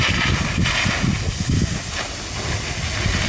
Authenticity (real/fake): real